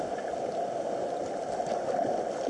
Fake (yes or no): no